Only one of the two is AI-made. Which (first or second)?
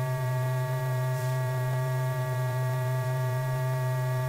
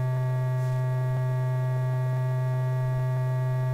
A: first